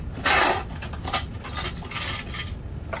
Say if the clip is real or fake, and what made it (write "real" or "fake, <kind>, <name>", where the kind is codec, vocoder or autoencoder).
real